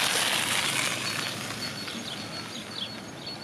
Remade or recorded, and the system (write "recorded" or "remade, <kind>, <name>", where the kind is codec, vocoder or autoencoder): recorded